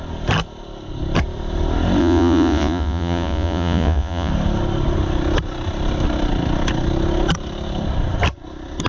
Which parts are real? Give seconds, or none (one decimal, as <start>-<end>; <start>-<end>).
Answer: 0.0-2.0; 4.3-8.9